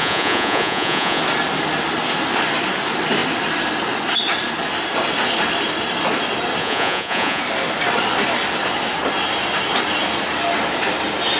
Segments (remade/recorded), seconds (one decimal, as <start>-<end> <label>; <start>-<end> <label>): 0.0-1.2 remade; 1.2-6.6 recorded; 6.6-7.4 remade; 7.4-11.4 recorded